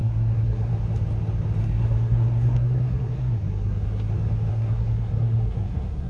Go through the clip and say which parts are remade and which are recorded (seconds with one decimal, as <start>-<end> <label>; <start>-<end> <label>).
0.0-0.7 remade; 0.7-1.6 recorded; 1.6-4.1 remade; 4.1-4.5 recorded; 4.5-6.1 remade